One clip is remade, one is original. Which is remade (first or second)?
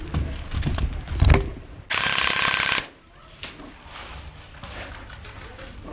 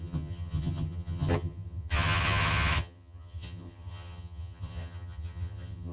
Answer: second